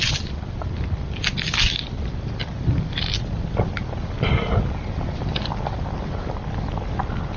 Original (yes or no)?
yes